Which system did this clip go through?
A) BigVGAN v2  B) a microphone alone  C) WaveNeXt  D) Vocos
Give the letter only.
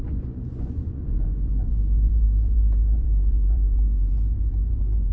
D